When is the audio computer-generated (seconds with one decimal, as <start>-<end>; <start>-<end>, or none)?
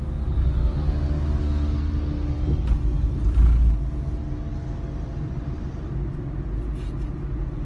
1.4-1.9